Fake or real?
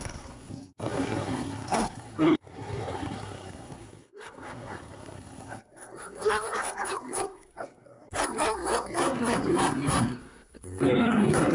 fake